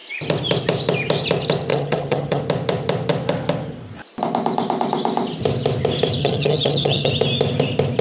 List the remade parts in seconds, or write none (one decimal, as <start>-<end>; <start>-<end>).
1.7-2.4; 6.2-7.1